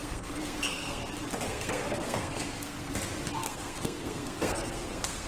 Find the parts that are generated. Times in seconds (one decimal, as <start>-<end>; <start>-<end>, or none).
0.0-1.0; 1.5-2.9; 3.4-5.3